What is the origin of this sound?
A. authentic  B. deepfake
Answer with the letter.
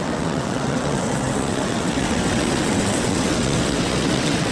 B